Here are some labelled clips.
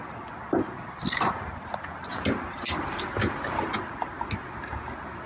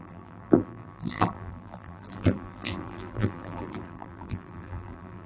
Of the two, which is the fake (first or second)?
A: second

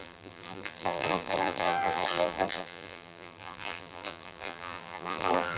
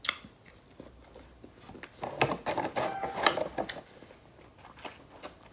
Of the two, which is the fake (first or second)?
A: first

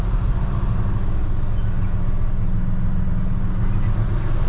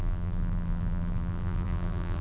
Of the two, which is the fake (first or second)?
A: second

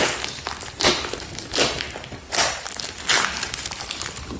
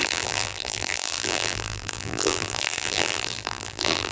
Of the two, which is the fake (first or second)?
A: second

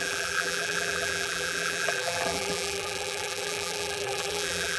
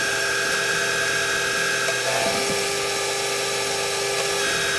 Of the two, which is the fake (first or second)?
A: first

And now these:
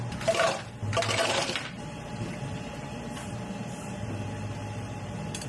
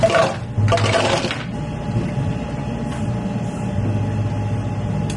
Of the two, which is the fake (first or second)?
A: first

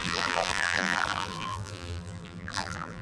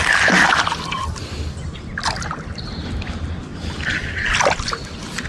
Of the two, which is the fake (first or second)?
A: first